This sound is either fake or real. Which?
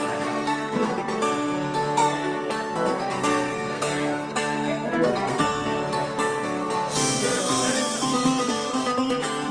fake